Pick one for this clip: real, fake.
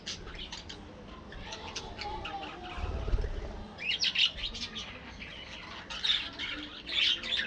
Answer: real